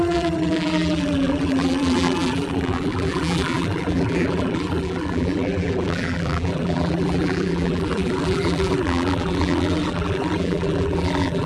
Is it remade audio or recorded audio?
remade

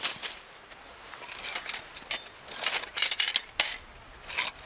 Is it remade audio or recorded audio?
recorded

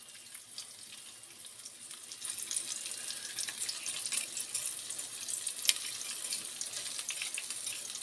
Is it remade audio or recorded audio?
recorded